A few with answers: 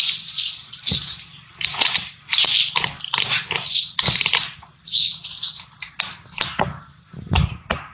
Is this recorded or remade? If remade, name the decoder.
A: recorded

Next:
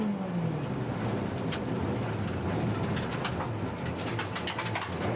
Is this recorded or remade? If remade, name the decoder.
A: recorded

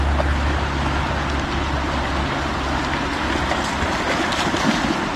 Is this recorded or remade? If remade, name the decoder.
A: recorded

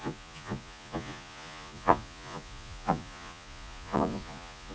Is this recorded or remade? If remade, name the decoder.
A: remade, vocoder, Vocos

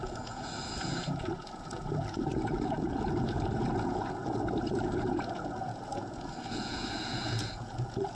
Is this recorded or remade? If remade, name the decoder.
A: remade, vocoder, Vocos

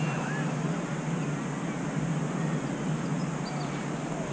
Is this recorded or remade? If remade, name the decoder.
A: recorded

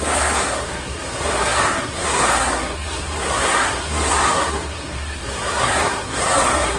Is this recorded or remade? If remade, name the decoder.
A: remade, codec, SNAC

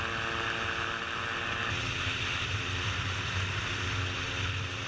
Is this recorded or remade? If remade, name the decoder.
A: recorded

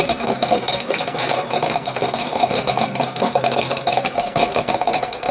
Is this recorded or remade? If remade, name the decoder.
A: remade, codec, SNAC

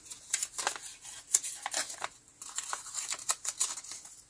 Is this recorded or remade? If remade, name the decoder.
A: recorded